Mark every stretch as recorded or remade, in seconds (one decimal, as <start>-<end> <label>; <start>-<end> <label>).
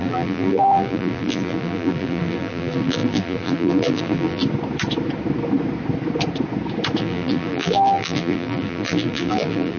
0.0-4.4 remade; 4.4-7.0 recorded; 7.0-9.8 remade